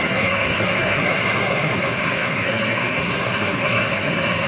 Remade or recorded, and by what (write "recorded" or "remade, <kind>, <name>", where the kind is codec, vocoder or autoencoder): remade, codec, SNAC